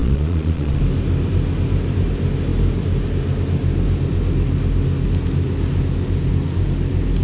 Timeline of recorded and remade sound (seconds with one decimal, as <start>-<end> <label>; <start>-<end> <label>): 0.0-0.8 remade; 0.8-7.2 recorded